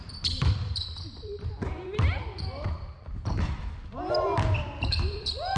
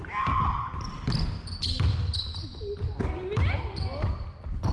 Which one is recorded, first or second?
second